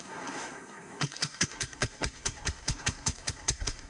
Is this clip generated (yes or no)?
yes